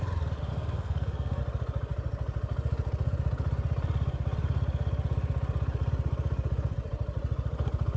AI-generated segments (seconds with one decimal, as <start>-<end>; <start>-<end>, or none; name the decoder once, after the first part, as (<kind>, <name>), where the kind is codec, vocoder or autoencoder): 0.5-1.4 (codec, SNAC)